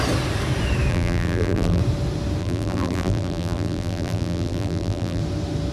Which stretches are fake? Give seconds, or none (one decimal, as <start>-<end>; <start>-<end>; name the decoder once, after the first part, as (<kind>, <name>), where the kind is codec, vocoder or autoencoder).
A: 0.9-1.8 (vocoder, BigVGAN v2); 2.4-5.2